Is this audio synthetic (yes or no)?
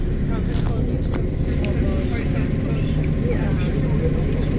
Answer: no